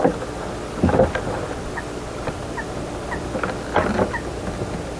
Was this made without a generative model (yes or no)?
yes